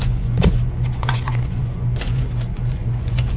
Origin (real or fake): fake